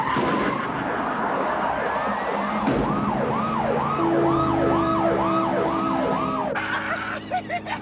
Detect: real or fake real